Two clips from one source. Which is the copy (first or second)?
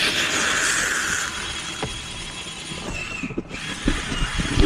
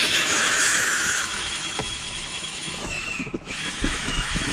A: second